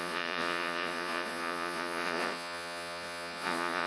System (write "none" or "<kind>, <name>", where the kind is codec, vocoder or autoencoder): vocoder, Vocos